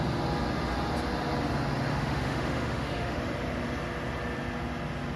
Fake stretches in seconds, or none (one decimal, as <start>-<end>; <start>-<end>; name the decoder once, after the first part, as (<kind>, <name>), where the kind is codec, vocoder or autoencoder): 1.9-3.2 (autoencoder, DAC-VAE)